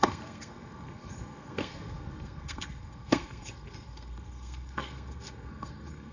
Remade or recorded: remade